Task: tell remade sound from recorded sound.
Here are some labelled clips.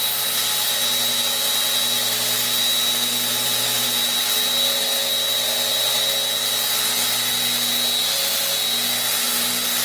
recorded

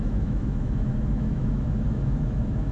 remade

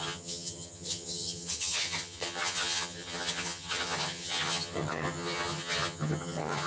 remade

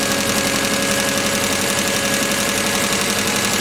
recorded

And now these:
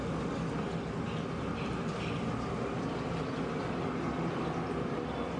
recorded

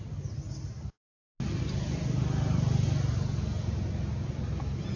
recorded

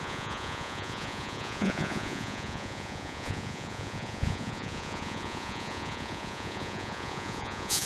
remade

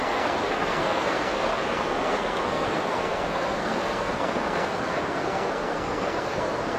remade